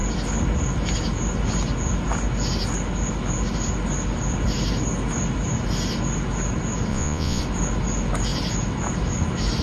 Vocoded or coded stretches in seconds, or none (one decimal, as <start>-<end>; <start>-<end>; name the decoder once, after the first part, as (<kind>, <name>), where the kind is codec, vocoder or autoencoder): 6.9-7.4 (vocoder, Vocos)